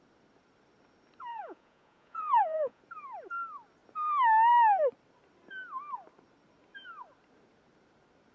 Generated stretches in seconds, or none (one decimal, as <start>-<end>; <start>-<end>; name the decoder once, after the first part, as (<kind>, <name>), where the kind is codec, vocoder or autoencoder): 1.3-2.8 (vocoder, Vocos)